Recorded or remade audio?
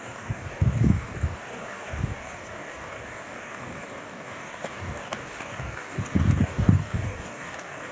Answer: remade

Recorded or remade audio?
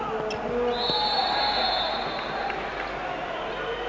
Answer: recorded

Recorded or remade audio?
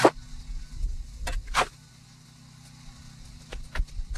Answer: recorded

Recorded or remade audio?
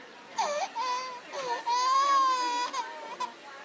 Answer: recorded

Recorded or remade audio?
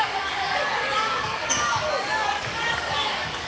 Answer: remade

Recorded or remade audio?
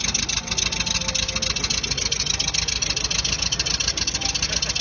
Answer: recorded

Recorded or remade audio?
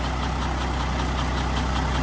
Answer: recorded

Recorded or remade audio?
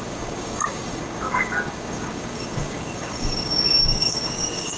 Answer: remade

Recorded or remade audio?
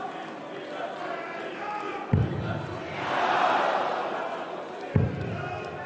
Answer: recorded